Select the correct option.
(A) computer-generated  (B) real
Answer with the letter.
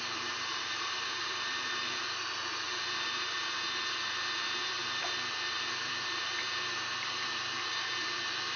A